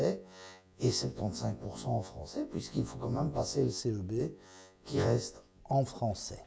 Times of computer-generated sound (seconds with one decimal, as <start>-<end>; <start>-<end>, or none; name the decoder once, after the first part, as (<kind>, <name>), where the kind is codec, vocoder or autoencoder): 0.0-3.8 (vocoder, Vocos); 4.2-5.6